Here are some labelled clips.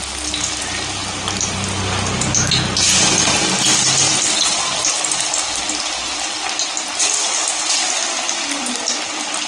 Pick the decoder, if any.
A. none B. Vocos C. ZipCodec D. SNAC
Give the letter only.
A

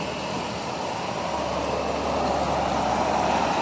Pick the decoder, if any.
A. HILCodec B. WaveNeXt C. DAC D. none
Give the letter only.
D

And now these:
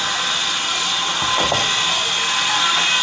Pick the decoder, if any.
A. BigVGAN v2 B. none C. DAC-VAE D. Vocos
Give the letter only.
B